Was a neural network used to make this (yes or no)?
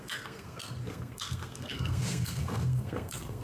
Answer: yes